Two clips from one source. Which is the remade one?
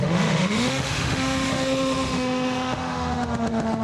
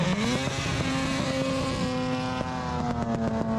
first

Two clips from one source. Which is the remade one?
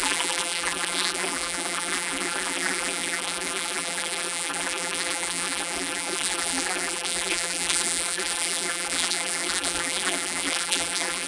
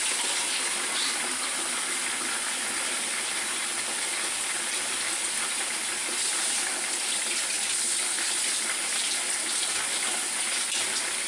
first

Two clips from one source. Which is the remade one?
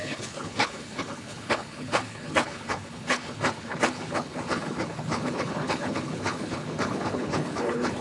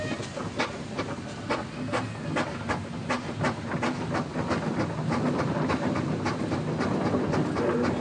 first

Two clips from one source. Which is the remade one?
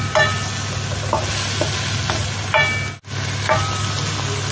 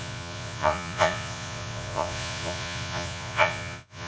second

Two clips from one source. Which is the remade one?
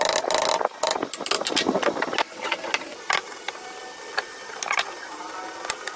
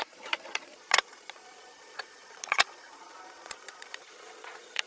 second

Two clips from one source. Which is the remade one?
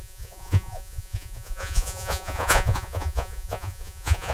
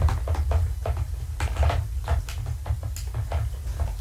first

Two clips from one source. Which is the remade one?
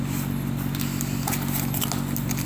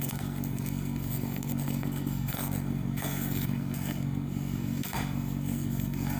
second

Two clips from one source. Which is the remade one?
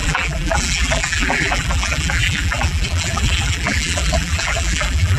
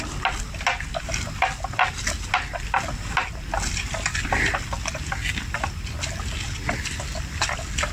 first